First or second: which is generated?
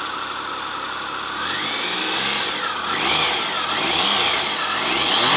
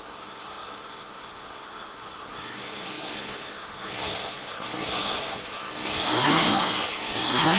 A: second